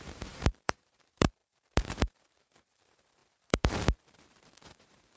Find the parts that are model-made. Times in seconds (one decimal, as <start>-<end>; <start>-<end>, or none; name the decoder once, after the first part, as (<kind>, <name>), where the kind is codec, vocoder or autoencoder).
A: 0.0-1.4 (vocoder, BigVGAN v2); 2.0-5.2